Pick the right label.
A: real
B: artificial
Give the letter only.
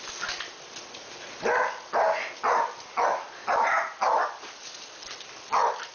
A